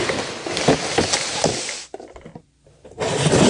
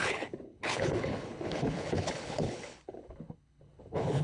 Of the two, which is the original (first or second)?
first